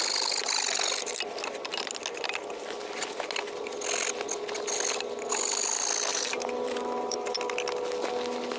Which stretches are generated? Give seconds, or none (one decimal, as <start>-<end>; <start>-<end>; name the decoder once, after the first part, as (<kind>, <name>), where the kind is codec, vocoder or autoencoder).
6.1-7.3 (vocoder, BigVGAN v2)